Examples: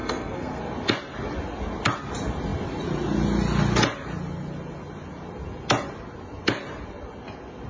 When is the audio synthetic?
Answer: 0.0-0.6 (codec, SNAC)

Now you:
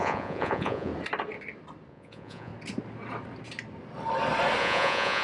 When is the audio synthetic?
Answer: 0.0-0.9 (vocoder, Vocos); 1.9-2.5; 4.6-5.2

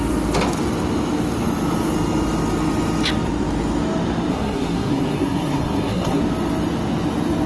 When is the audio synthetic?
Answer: 4.3-6.2 (codec, SNAC)

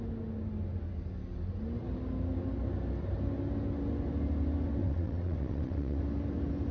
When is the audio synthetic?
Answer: 4.8-6.0 (vocoder, WaveNeXt)